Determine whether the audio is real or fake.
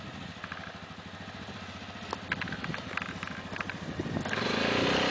real